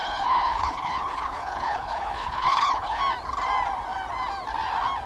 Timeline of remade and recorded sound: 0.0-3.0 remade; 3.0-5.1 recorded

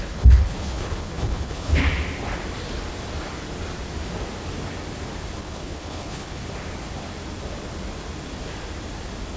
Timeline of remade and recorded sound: 0.0-1.8 remade; 1.8-5.4 recorded; 5.4-6.4 remade; 6.4-9.4 recorded